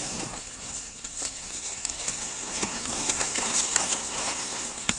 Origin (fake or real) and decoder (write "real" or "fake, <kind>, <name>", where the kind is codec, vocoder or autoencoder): fake, codec, SNAC